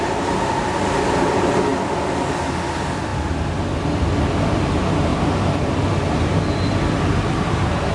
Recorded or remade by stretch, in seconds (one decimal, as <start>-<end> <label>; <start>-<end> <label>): 0.0-7.9 recorded

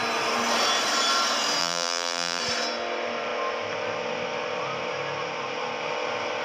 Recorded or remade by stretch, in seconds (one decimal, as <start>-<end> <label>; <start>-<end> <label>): 0.0-1.6 recorded; 1.6-2.4 remade; 2.4-6.4 recorded

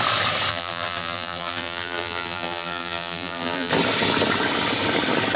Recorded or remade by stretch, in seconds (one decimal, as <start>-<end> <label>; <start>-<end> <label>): 0.0-0.5 recorded; 0.5-3.7 remade; 3.7-5.4 recorded

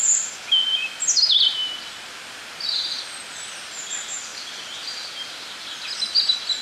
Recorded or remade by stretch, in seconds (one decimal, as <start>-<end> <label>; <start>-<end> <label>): 0.0-6.6 recorded

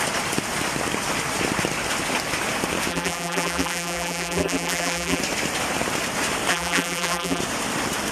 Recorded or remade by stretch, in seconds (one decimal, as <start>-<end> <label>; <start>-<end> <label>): 0.0-2.9 recorded; 2.9-5.2 remade; 5.2-6.5 recorded; 6.5-7.4 remade; 7.4-8.1 recorded